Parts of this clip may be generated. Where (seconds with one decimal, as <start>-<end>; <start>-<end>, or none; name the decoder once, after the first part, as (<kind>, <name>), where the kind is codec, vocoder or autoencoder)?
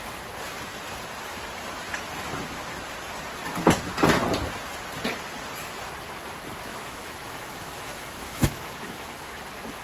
6.7-9.4 (autoencoder, DAC-VAE)